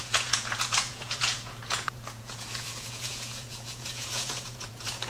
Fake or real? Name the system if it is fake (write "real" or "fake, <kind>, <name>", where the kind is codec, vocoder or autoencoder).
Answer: fake, vocoder, Vocos